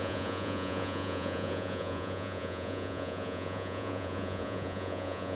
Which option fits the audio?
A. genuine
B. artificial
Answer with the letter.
B